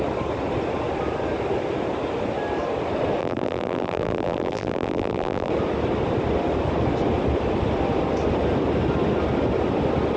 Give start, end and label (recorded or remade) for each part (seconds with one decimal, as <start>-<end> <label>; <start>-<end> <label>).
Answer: 0.0-3.2 recorded; 3.2-5.5 remade; 5.5-10.2 recorded